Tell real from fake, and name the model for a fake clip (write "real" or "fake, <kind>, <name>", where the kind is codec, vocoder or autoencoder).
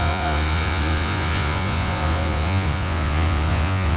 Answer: fake, vocoder, Vocos